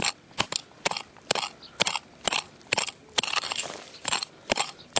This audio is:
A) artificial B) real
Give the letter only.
B